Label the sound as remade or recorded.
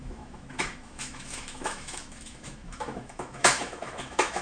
remade